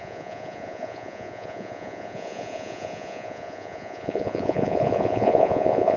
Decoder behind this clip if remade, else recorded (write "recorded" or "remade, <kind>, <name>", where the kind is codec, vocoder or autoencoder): remade, vocoder, Vocos